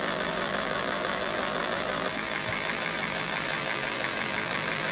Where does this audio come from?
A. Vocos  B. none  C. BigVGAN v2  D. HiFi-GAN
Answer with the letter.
C